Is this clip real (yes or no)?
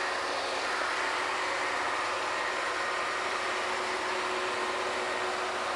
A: yes